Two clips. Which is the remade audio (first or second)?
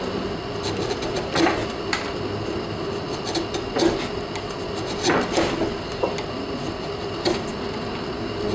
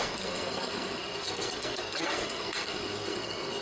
second